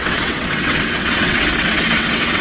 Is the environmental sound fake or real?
fake